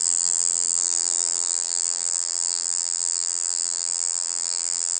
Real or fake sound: fake